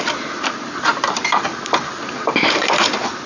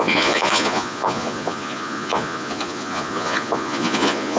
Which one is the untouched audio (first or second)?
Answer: first